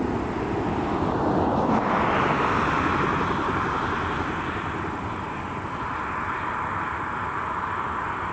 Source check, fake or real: real